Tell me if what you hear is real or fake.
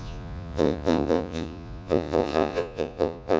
fake